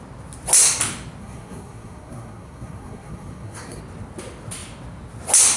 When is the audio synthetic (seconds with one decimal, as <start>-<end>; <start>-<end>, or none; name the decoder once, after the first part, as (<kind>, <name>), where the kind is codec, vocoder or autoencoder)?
1.2-3.8 (codec, SNAC)